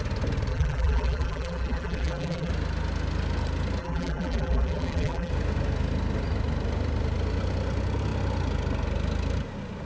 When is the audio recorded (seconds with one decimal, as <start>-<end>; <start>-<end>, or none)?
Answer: 0.0-0.5; 2.5-3.8; 5.3-9.9